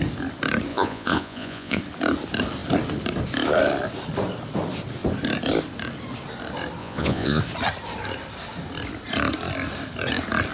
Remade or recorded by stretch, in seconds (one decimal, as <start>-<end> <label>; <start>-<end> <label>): 0.0-0.7 recorded; 0.7-1.8 remade; 1.8-6.8 recorded; 6.8-7.4 remade; 7.4-10.5 recorded